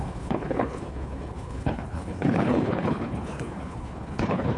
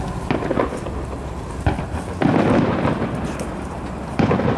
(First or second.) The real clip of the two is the second